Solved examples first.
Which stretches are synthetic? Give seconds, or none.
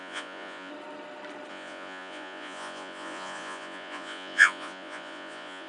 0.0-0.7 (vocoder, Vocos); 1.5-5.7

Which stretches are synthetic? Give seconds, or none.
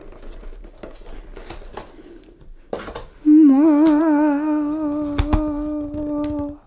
none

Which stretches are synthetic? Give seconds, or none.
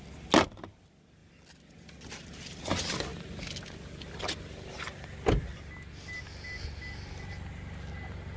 none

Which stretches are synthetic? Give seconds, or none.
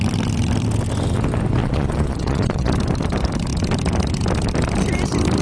1.6-2.7 (vocoder, Vocos)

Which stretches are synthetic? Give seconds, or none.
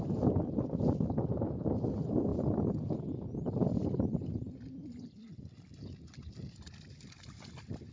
none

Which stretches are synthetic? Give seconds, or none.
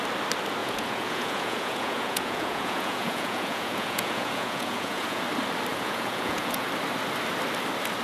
0.6-5.2 (vocoder, Vocos); 5.7-6.7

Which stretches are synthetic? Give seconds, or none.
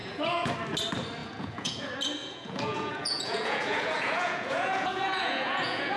0.0-0.5 (vocoder, Vocos); 1.2-1.8; 2.2-6.0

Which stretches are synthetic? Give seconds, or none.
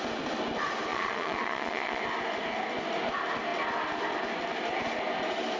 0.9-2.0 (vocoder, Vocos)